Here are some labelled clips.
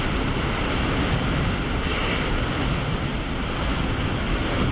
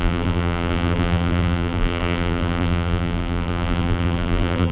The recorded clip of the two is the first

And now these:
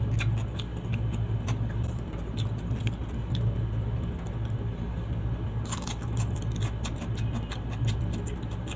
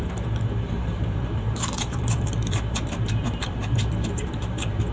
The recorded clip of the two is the first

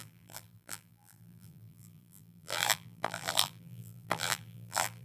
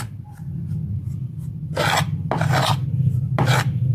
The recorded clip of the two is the second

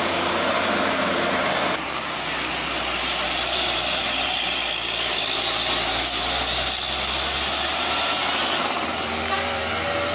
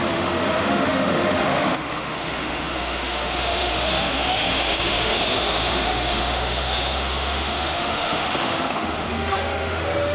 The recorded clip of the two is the first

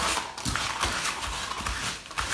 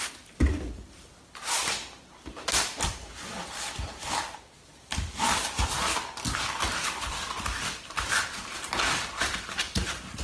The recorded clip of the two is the first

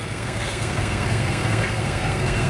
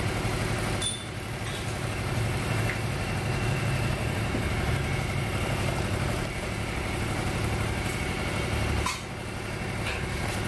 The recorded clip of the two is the second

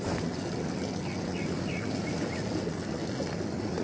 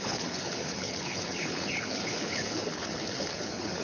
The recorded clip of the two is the first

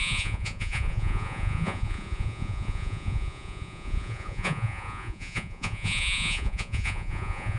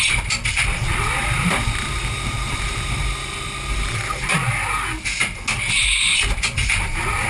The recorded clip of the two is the second